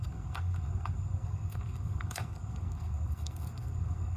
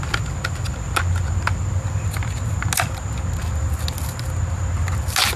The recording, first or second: second